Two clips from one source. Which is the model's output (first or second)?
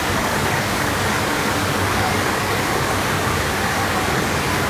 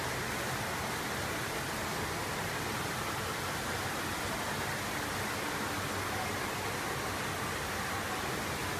first